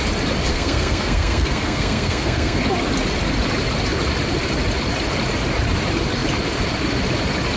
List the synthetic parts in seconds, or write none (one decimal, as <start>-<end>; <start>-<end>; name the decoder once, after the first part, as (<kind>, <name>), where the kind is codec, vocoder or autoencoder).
0.5-2.6 (codec, SNAC)